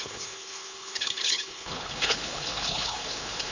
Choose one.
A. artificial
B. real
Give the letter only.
A